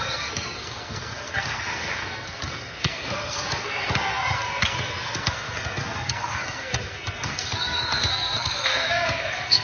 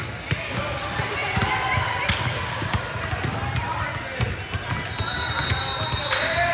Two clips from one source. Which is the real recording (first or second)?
second